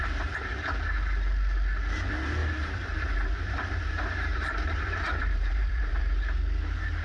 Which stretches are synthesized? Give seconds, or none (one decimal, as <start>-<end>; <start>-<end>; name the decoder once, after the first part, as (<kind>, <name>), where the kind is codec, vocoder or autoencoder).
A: 2.4-6.2 (vocoder, BigVGAN v2)